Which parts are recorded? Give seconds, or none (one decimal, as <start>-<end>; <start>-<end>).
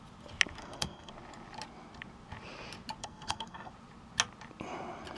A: 0.0-0.6; 1.1-3.0; 3.7-5.2